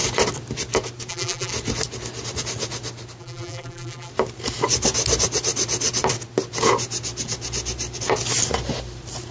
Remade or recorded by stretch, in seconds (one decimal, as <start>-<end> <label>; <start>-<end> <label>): 0.0-1.1 recorded; 1.1-1.5 remade; 1.5-3.2 recorded; 3.2-4.1 remade; 4.1-9.3 recorded

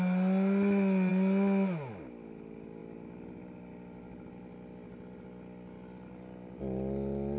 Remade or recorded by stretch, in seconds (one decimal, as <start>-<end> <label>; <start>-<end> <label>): 0.0-7.4 recorded

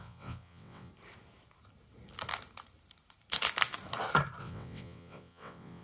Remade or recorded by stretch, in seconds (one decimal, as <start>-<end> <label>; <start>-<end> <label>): 0.0-0.9 remade; 0.9-4.4 recorded; 4.4-5.8 remade

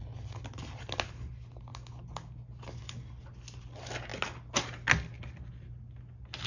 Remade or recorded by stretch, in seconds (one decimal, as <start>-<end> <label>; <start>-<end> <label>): 0.0-6.5 recorded